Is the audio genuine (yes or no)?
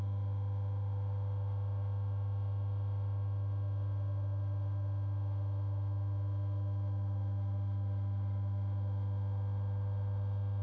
no